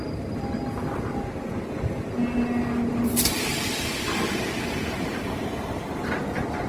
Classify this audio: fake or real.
real